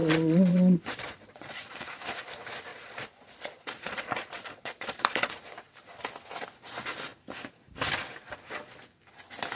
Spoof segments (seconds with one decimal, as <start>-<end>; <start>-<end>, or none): 0.0-1.7; 2.7-5.3